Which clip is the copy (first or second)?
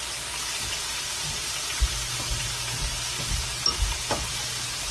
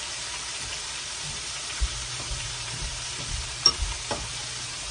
second